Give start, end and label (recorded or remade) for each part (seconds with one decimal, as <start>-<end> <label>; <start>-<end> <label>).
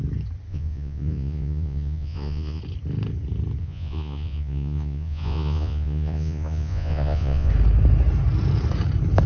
0.0-0.5 recorded; 0.5-2.6 remade; 2.6-3.6 recorded; 3.6-7.5 remade; 7.5-9.3 recorded